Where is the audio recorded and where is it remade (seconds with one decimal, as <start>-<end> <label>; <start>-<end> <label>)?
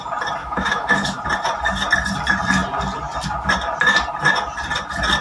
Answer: 0.0-0.4 recorded; 0.4-1.2 remade; 1.2-5.2 recorded